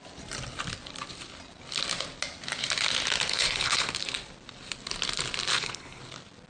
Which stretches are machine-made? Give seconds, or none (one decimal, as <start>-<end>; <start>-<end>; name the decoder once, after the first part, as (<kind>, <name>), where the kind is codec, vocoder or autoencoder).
3.3-3.9 (codec, HILCodec); 5.5-6.0